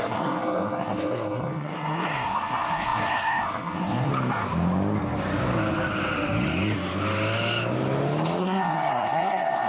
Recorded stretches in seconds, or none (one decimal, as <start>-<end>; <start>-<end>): 4.1-8.4